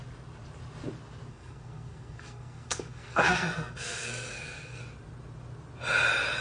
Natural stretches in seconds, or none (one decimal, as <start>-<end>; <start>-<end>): 0.0-1.3; 4.8-6.4